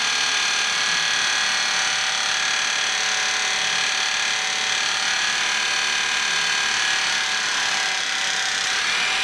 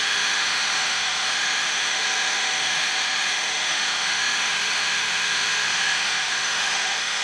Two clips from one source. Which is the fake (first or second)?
second